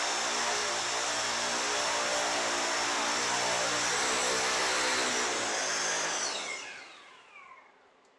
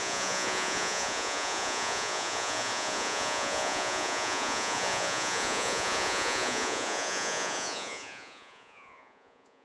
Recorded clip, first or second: first